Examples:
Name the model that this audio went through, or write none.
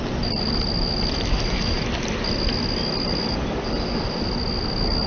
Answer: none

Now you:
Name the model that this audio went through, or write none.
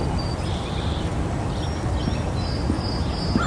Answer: none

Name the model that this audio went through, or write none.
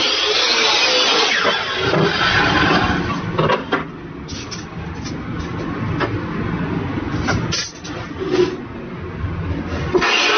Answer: none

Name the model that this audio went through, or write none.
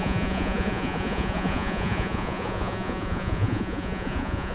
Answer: vocoder, Vocos